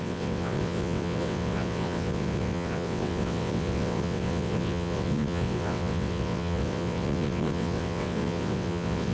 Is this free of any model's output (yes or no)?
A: no